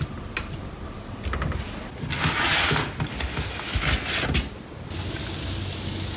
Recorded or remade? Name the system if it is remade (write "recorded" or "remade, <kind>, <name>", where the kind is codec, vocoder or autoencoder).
recorded